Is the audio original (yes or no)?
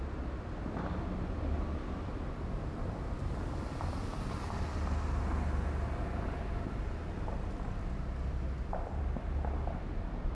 yes